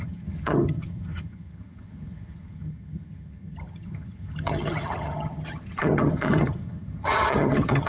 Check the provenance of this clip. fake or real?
fake